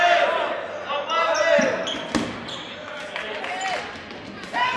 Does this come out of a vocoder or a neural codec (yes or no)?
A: no